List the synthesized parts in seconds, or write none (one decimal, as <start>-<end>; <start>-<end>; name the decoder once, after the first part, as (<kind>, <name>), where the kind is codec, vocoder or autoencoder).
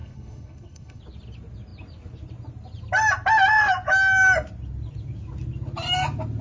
0.0-1.0 (codec, HILCodec)